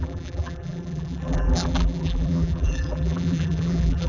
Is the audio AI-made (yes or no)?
yes